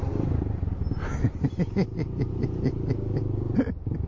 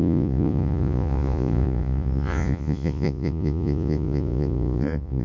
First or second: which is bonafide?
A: first